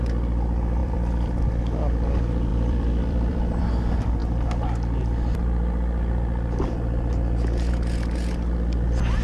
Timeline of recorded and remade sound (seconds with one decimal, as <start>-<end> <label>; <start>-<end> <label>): 0.0-0.8 recorded; 0.8-1.4 remade; 1.4-2.5 recorded; 2.5-3.6 remade; 3.6-9.2 recorded